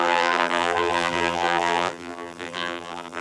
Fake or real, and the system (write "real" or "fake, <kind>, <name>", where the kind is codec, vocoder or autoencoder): fake, vocoder, BigVGAN v2